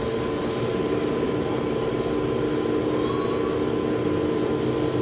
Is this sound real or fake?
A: real